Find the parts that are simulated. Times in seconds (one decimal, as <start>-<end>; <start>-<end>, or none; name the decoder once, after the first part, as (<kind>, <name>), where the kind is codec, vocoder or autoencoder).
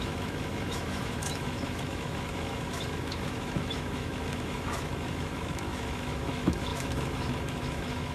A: 0.0-8.1 (autoencoder, DAC-VAE)